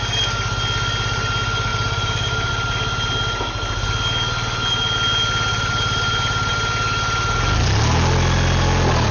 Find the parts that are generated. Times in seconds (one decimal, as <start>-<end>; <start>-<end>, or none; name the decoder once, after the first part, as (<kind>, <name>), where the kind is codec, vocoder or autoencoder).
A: 1.7-2.5 (vocoder, BigVGAN v2); 5.5-6.5